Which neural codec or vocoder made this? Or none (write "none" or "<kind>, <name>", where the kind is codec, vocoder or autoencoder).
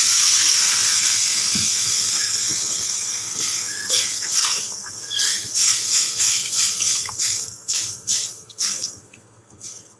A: codec, SNAC